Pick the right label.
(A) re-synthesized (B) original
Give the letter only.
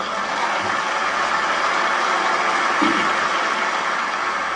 B